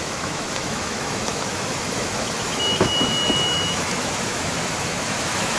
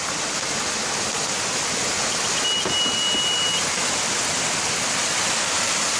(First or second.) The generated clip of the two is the first